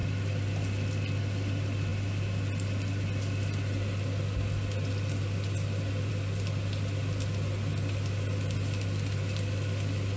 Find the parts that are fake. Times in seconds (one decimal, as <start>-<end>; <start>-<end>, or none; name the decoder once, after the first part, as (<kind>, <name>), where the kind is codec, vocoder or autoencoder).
none